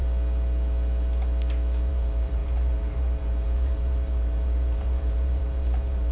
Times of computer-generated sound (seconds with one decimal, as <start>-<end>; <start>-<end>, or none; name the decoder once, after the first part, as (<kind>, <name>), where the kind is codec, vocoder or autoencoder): 1.9-6.1 (vocoder, BigVGAN v2)